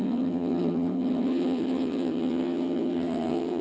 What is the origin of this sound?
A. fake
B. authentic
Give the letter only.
A